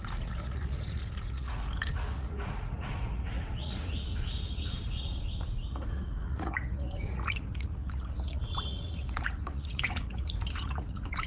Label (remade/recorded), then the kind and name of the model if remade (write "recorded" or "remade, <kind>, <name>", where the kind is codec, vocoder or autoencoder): remade, vocoder, Vocos